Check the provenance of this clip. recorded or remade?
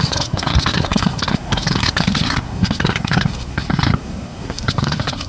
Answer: remade